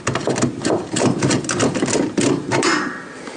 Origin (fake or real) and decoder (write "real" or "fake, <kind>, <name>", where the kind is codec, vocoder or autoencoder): real